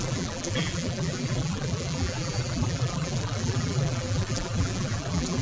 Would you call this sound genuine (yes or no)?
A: no